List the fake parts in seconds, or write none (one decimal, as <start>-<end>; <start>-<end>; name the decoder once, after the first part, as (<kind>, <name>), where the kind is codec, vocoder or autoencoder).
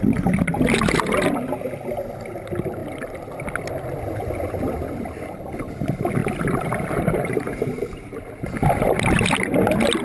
6.2-8.2 (vocoder, BigVGAN v2)